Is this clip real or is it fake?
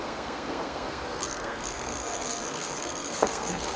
fake